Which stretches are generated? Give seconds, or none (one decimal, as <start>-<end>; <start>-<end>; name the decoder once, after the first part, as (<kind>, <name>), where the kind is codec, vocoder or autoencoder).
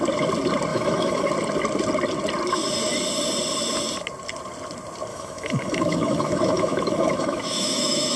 0.7-1.3 (autoencoder, DAC-VAE); 5.1-8.2